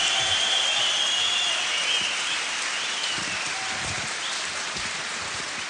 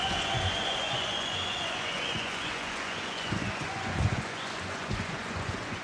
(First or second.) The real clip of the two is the first